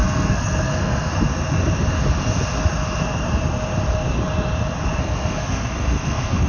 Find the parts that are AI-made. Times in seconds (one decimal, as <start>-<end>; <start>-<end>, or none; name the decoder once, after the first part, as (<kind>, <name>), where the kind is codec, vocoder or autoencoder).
0.0-1.1 (codec, SNAC); 5.0-6.5